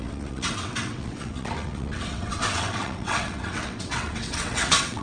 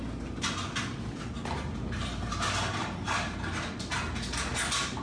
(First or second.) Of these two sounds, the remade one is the first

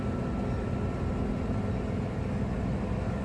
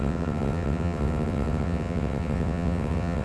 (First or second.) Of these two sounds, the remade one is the second